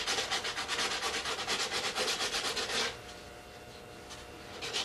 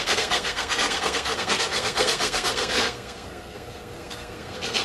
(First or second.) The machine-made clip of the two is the second